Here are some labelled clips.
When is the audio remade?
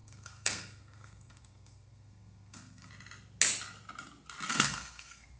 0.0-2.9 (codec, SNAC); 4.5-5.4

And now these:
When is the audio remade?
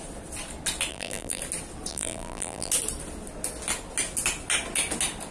0.9-1.4 (vocoder, BigVGAN v2); 1.9-2.7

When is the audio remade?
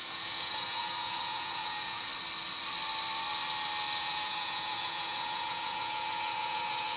0.0-2.1 (vocoder, Vocos); 4.0-7.0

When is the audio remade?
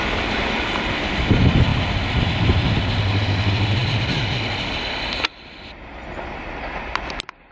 none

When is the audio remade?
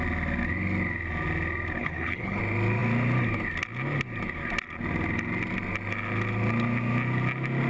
1.8-2.4 (codec, HILCodec)